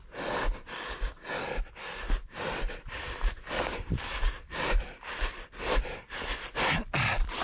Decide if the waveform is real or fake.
real